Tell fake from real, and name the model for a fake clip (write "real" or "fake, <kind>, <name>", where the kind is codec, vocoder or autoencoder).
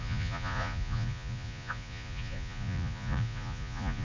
fake, vocoder, Vocos